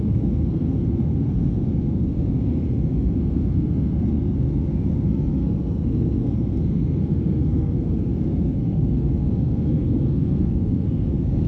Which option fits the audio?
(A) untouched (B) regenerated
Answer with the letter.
B